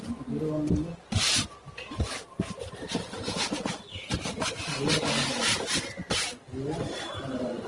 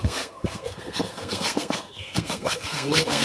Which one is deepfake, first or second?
second